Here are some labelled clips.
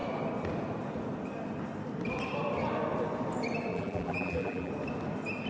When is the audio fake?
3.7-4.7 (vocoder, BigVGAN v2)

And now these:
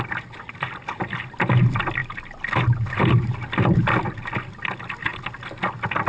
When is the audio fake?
none

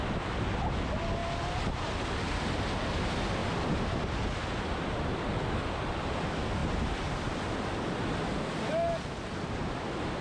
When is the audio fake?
none

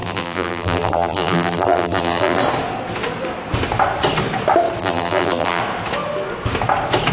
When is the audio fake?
0.0-2.4 (vocoder, BigVGAN v2); 4.8-5.6

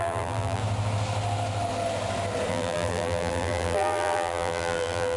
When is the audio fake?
0.0-0.6 (vocoder, BigVGAN v2); 2.5-5.2

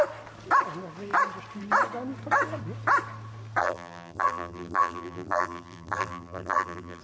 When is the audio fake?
3.6-7.0 (vocoder, BigVGAN v2)